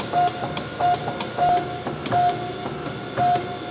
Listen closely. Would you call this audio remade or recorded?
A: recorded